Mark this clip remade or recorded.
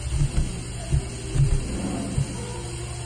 recorded